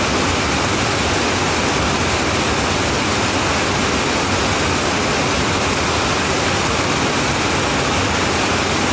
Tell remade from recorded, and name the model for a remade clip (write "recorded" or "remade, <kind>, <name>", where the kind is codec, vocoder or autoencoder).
recorded